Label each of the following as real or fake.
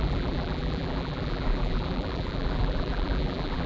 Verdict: fake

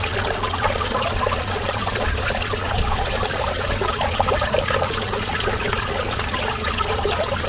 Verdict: fake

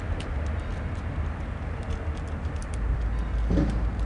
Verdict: real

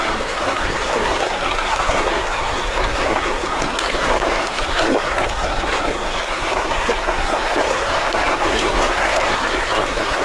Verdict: fake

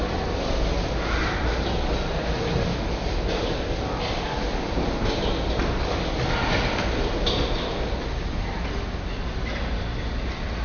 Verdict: real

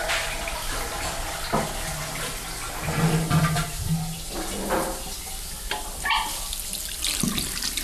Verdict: real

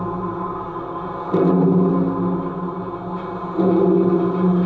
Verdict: real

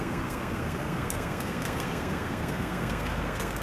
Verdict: fake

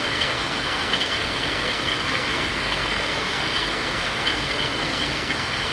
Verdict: fake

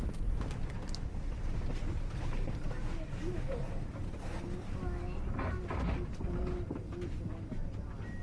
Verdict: real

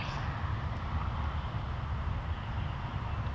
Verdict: real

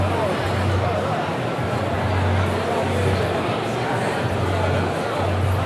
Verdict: real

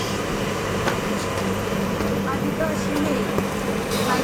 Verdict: fake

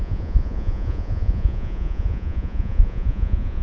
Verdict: fake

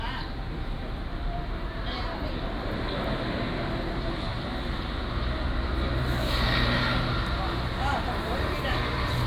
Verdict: fake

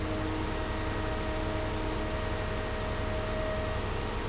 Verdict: real